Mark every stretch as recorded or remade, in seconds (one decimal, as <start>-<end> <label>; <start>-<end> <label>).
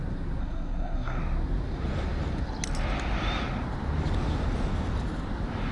0.0-0.4 recorded; 0.4-1.2 remade; 1.2-5.7 recorded